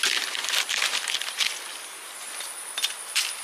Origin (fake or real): real